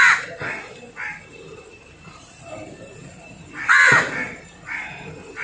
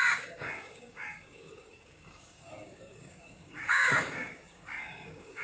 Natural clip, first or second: first